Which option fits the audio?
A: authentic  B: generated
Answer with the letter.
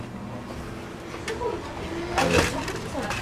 A